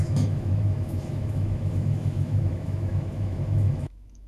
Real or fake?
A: fake